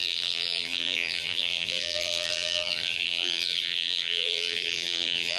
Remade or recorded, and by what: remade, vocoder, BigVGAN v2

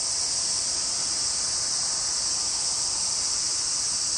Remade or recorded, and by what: recorded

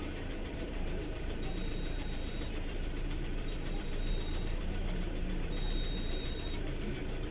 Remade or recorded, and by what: remade, vocoder, BigVGAN v2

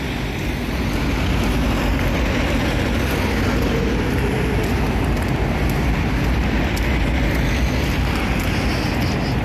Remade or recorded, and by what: recorded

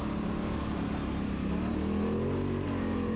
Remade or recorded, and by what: recorded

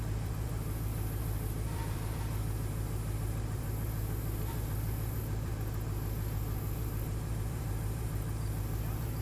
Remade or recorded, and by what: remade, vocoder, BigVGAN v2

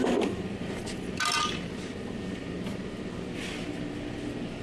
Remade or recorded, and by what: recorded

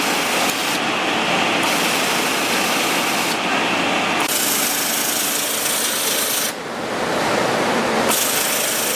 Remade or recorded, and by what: recorded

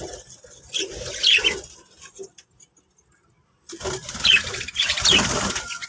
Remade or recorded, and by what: recorded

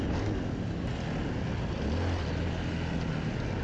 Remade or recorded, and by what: recorded